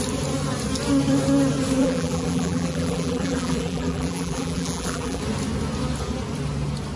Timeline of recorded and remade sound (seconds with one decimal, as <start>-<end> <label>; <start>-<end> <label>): 0.0-1.8 recorded; 1.8-5.2 remade; 5.2-7.0 recorded